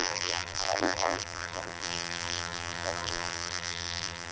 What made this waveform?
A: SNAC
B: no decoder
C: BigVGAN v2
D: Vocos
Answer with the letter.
C